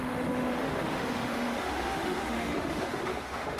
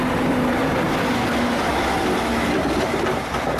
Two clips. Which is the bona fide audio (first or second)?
second